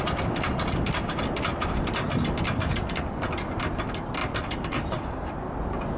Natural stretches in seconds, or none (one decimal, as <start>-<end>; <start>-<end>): 0.0-4.2; 5.5-6.0